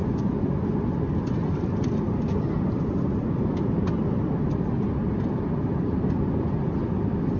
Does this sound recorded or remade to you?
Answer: recorded